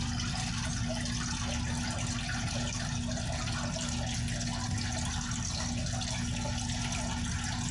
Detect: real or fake real